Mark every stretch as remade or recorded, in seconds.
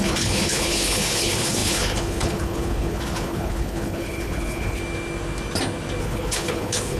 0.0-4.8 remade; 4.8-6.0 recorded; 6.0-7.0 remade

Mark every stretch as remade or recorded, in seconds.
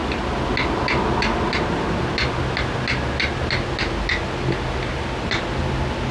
0.0-6.1 recorded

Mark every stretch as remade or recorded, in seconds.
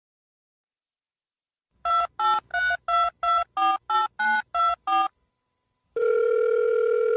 0.0-6.1 recorded; 6.1-7.2 remade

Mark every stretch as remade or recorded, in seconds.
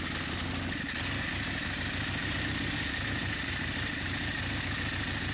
0.0-2.2 recorded; 2.2-4.2 remade; 4.2-5.3 recorded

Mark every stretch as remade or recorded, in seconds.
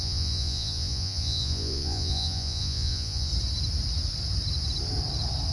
0.0-3.3 remade; 3.3-5.5 recorded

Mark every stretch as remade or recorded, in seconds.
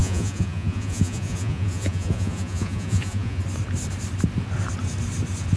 0.0-3.4 remade; 3.4-5.6 recorded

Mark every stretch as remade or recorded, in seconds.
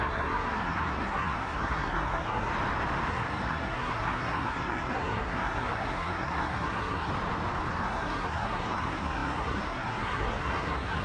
0.0-2.5 remade; 2.5-3.1 recorded; 3.1-7.1 remade; 7.1-7.7 recorded; 7.7-11.0 remade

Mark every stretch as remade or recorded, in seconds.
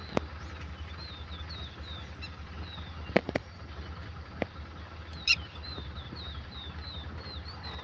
0.0-3.2 recorded; 3.2-3.7 remade; 3.7-7.8 recorded